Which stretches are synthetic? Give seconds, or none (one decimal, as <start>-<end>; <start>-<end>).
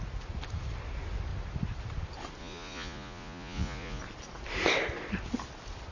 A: 2.4-4.0